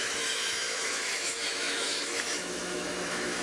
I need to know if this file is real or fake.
fake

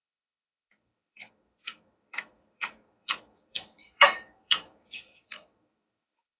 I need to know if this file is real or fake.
fake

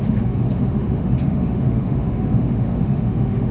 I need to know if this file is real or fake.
fake